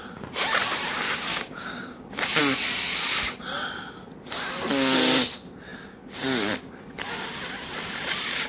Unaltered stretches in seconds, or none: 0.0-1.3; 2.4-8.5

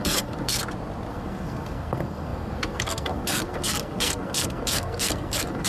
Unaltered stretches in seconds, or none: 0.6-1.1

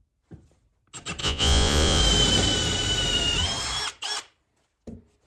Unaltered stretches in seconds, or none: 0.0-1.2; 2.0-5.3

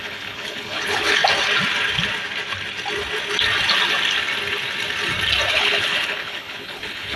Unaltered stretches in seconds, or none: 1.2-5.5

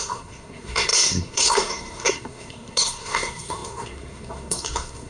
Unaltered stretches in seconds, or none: none

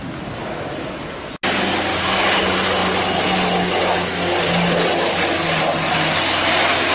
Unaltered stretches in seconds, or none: 0.0-6.9

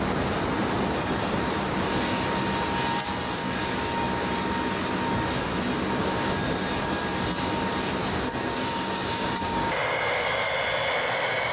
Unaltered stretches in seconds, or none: 0.0-8.0; 10.5-11.5